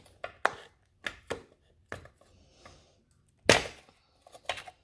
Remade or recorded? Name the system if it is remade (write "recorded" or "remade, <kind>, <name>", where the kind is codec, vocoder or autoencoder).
recorded